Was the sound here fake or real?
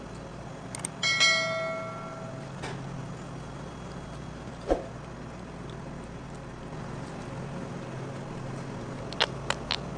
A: real